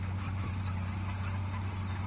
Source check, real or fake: real